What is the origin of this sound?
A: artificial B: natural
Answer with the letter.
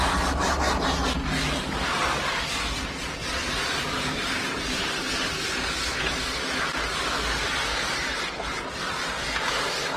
B